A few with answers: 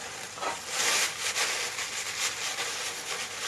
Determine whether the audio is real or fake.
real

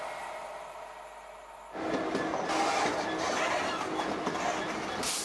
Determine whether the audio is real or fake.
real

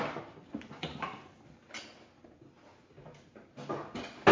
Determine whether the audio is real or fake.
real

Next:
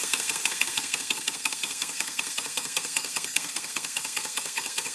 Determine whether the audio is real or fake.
fake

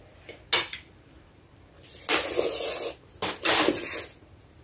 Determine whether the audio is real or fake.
real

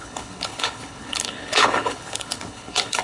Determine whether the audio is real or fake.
fake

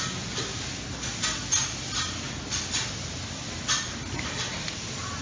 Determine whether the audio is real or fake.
real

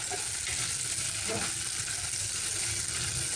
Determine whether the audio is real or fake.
real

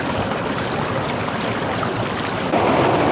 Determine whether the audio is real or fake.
real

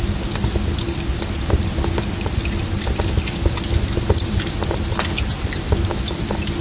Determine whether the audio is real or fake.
real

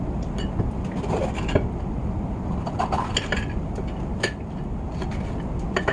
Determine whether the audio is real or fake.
real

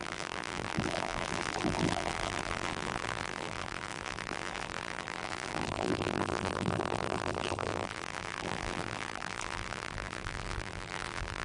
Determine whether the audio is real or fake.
fake